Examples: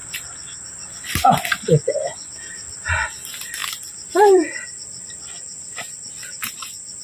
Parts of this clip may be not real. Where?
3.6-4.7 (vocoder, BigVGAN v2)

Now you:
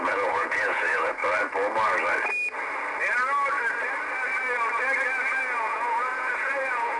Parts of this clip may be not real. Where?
0.0-1.2 (vocoder, Vocos); 5.0-7.0

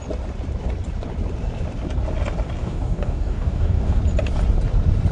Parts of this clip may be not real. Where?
2.6-4.0 (codec, DAC)

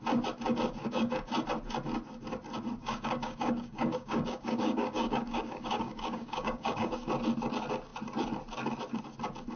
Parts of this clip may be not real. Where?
0.8-1.3 (codec, DAC); 2.8-7.1

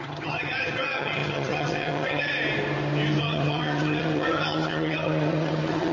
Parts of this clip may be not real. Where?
0.0-2.3 (vocoder, HiFi-GAN); 3.2-5.9

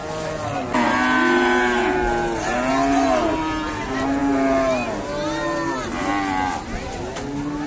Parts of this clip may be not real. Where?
none

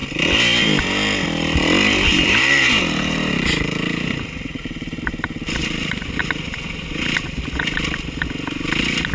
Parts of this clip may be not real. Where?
2.1-5.0 (vocoder, BigVGAN v2); 5.6-6.1